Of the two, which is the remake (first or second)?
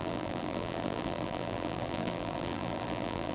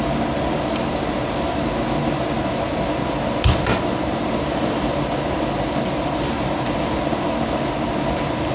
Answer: first